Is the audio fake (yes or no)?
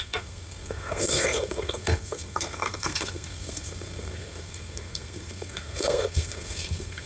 yes